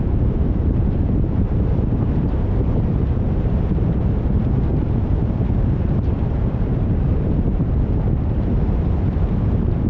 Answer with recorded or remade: remade